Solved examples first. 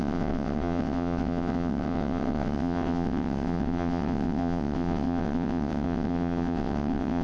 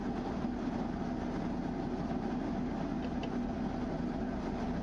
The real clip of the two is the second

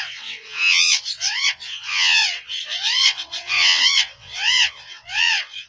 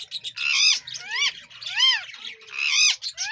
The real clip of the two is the second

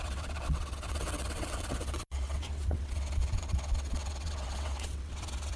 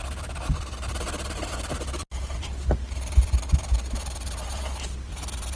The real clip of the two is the second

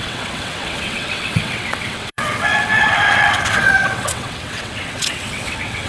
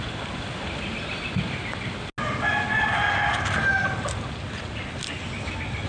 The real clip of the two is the second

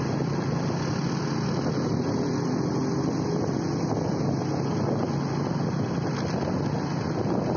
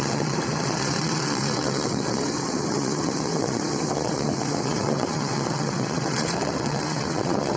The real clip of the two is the first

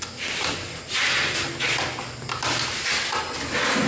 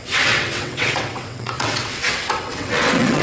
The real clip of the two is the first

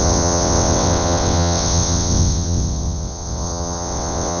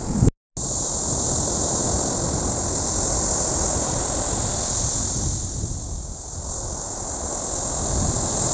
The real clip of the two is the second